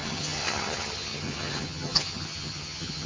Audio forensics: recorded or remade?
remade